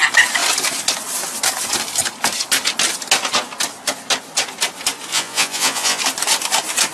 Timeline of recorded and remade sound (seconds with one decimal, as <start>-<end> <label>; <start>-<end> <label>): 0.0-5.1 recorded; 5.1-6.0 remade; 6.0-6.9 recorded